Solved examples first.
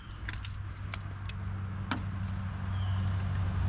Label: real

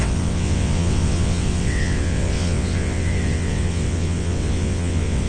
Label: fake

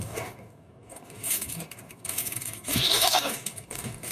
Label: fake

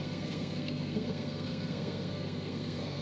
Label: fake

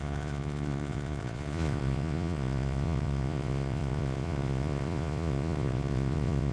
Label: fake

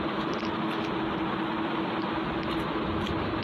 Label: real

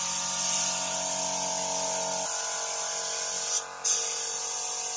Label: real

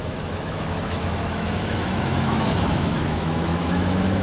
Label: fake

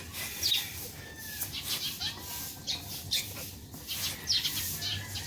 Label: real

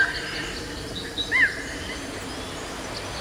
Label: real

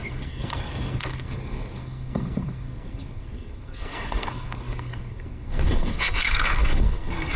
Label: fake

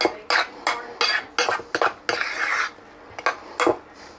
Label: real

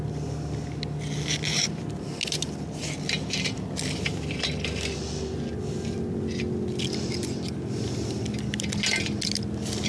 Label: real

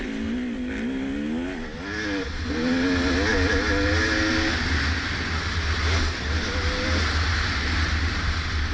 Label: real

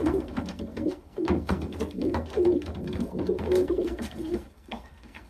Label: fake